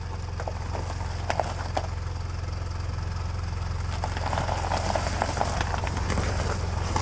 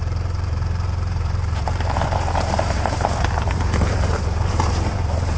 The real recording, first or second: first